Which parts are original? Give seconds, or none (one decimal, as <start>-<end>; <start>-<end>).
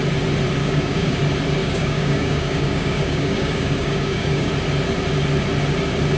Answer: 0.0-0.6; 1.2-1.6; 4.5-6.2